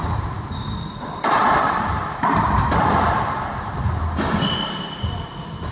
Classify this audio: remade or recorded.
recorded